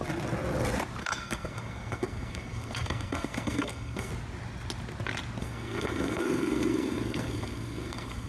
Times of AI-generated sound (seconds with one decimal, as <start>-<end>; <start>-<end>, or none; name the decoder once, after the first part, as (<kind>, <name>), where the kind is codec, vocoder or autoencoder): 1.0-4.1 (codec, SNAC); 5.4-8.3